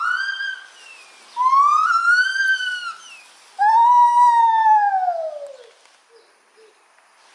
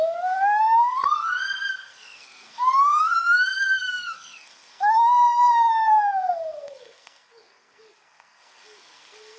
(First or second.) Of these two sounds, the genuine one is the first